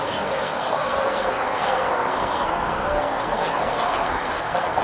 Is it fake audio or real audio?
fake